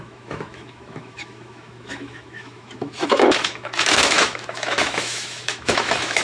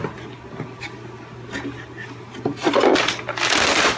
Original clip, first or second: second